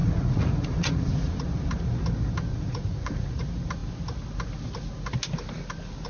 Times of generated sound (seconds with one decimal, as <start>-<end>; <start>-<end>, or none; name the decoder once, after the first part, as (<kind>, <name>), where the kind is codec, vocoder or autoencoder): 0.0-1.1 (vocoder, Vocos); 2.5-3.4